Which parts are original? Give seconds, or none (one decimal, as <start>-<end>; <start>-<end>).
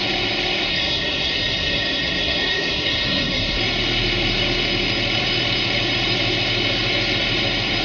0.0-0.7; 3.6-7.8